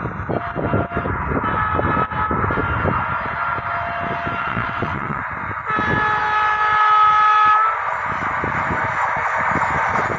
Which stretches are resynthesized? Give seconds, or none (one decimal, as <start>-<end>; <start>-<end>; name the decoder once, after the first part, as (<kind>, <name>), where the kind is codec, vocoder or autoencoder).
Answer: 4.4-5.2 (vocoder, WaveNeXt)